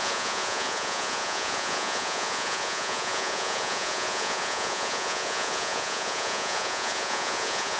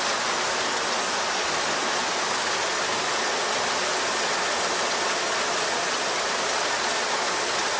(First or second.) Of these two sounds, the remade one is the first